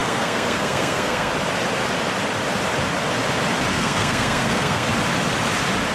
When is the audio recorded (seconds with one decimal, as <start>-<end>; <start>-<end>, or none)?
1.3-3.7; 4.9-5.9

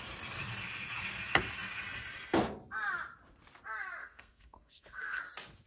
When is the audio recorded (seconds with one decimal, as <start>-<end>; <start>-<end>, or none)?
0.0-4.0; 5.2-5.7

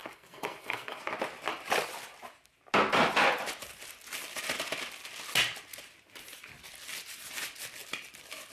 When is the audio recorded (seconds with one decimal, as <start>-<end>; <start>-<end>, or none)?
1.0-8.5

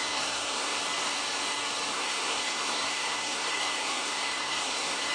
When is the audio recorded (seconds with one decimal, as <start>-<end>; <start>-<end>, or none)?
0.8-1.9

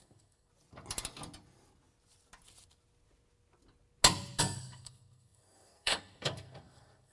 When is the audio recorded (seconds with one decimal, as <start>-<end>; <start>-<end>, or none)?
0.5-4.4

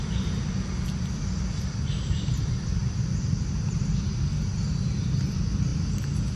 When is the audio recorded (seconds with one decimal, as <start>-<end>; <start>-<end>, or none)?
0.0-6.4